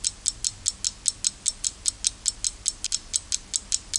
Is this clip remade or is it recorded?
recorded